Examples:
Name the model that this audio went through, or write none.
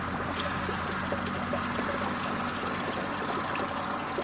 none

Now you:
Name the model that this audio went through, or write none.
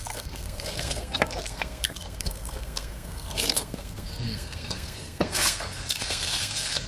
codec, SNAC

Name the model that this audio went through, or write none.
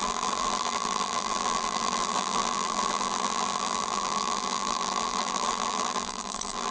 vocoder, BigVGAN v2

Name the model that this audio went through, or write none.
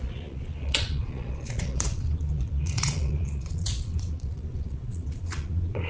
vocoder, Vocos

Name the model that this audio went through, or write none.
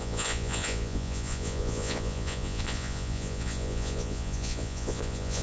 vocoder, Vocos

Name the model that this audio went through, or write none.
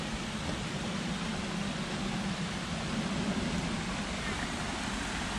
none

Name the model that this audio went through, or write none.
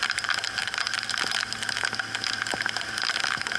none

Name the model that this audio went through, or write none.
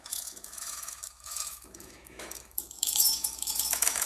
autoencoder, DAC-VAE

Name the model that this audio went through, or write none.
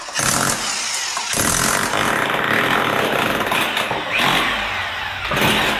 none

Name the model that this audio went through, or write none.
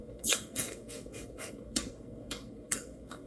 codec, SNAC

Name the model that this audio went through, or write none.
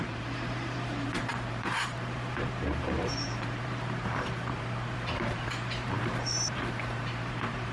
vocoder, BigVGAN v2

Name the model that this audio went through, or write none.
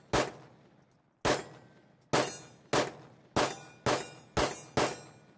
none